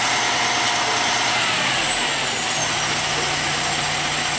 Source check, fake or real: real